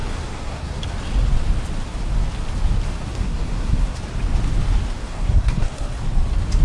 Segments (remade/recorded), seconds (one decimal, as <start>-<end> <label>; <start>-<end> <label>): 0.0-0.8 remade; 0.8-3.1 recorded; 3.1-4.0 remade; 4.0-5.0 recorded; 5.0-6.0 remade; 6.0-6.6 recorded